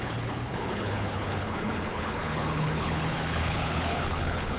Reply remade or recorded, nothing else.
remade